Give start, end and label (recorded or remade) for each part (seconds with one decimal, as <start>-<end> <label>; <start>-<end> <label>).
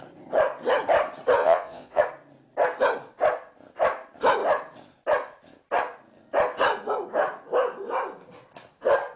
0.0-1.4 recorded; 1.4-2.0 remade; 2.0-9.2 recorded